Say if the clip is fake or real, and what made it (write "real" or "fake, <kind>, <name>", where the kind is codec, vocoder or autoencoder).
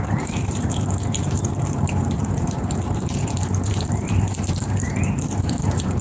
fake, vocoder, BigVGAN v2